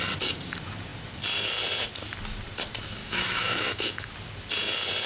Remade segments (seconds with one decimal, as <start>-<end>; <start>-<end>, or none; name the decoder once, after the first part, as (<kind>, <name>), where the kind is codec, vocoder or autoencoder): 3.0-4.1 (autoencoder, DAC-VAE)